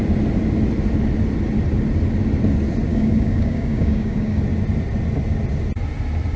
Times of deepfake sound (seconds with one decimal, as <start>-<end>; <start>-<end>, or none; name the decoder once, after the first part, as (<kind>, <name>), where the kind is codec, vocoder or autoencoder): 2.9-4.4 (codec, DAC)